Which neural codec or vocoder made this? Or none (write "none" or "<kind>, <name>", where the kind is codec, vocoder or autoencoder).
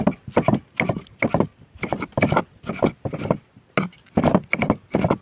none